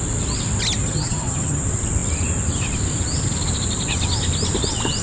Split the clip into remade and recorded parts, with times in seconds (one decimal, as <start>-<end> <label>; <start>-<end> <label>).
0.0-0.8 recorded; 0.8-1.6 remade; 1.6-5.0 recorded